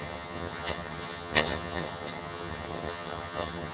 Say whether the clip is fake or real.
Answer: fake